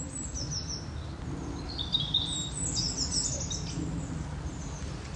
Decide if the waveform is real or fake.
real